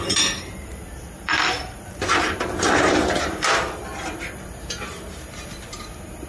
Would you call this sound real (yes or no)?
no